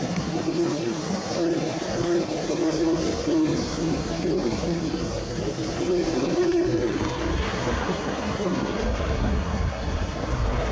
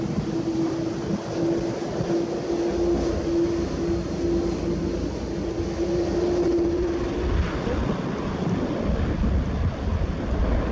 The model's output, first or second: first